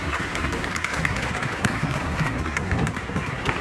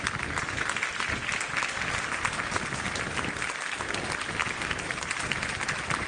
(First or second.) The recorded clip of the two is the second